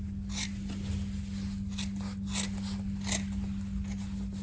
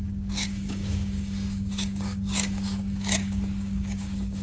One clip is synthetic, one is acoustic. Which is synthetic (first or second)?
second